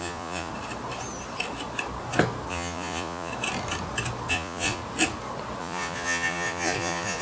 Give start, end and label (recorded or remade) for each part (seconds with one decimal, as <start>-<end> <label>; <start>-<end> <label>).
0.0-0.5 remade; 0.5-2.5 recorded; 2.5-3.3 remade; 3.3-4.3 recorded; 4.3-4.8 remade; 4.8-5.6 recorded; 5.6-7.2 remade